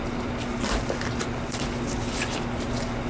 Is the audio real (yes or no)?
yes